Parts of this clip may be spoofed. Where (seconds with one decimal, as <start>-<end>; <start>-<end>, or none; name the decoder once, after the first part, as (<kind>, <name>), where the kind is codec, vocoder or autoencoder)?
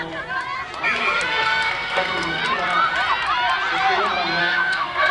1.0-2.4 (codec, SNAC); 4.4-5.1